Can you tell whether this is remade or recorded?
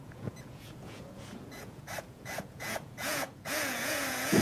remade